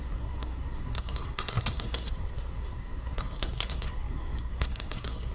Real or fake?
fake